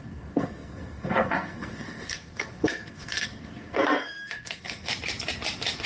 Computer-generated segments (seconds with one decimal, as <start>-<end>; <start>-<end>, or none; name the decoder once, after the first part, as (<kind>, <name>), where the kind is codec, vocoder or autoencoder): 0.0-4.9 (codec, SNAC)